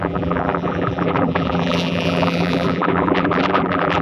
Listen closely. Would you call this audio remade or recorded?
remade